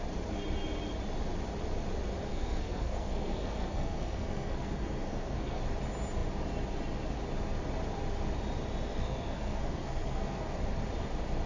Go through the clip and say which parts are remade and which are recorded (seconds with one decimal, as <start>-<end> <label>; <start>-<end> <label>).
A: 0.0-2.3 recorded; 2.3-5.6 remade; 5.6-8.9 recorded; 8.9-10.4 remade; 10.4-11.5 recorded